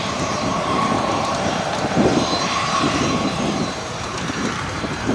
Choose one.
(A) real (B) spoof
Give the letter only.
B